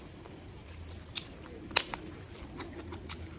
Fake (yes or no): no